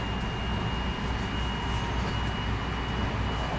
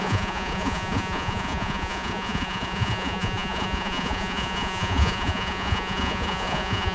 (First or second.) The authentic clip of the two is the first